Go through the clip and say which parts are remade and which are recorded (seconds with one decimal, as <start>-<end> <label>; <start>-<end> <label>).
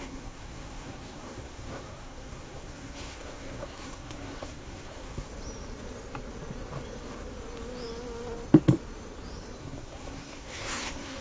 0.0-5.3 remade; 5.3-9.6 recorded; 9.6-11.2 remade